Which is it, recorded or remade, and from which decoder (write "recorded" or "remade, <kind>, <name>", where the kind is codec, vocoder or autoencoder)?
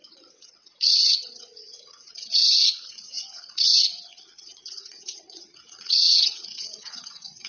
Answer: remade, vocoder, WaveNeXt